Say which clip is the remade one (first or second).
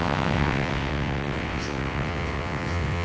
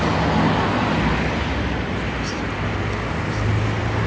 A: first